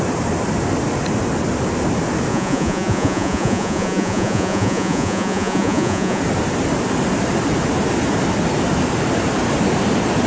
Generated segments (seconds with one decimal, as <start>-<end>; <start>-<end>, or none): 2.3-6.2